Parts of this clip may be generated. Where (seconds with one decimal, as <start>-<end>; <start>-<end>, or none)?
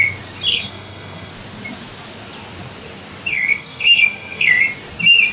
0.5-1.3; 3.3-4.6